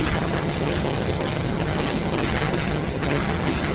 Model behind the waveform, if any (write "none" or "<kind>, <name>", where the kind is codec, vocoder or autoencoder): vocoder, HiFi-GAN